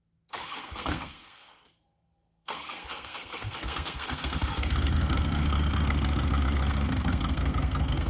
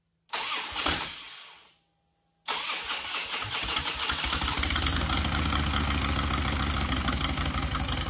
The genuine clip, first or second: second